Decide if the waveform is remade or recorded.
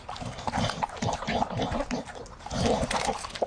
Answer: recorded